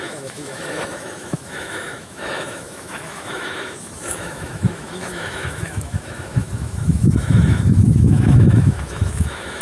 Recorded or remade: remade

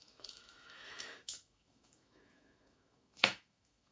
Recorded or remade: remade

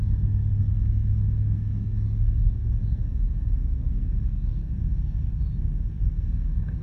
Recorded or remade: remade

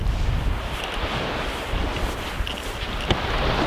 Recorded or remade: recorded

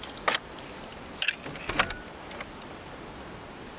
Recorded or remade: recorded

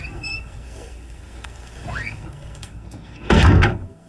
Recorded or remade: remade